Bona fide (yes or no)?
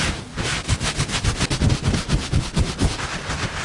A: yes